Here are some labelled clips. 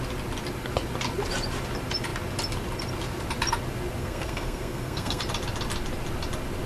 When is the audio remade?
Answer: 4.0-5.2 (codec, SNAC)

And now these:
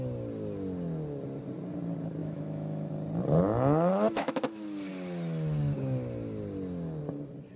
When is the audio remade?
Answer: 2.2-2.9 (autoencoder, DAC-VAE); 3.9-4.4

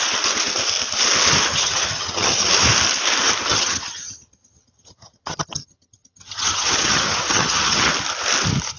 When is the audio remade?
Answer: 1.5-2.5 (vocoder, HiFi-GAN); 3.5-7.9

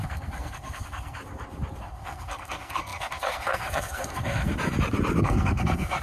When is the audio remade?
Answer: 0.0-1.2 (codec, SNAC); 1.8-4.5; 5.2-6.0

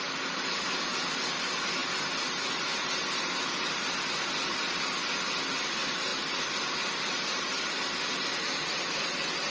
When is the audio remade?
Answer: none

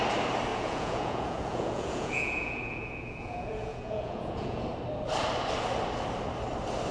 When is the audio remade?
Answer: 0.5-4.6 (vocoder, Vocos)